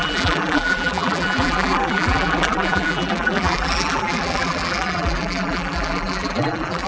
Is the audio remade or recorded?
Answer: remade